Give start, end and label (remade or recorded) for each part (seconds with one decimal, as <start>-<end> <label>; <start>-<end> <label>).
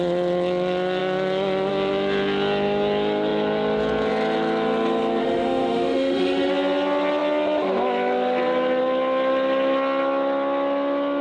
0.0-5.2 recorded; 5.2-6.5 remade; 6.5-11.2 recorded